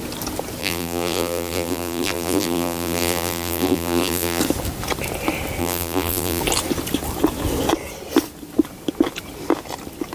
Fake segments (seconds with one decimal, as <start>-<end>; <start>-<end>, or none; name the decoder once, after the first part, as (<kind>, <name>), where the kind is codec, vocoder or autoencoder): 0.6-4.4 (vocoder, BigVGAN v2); 5.6-6.4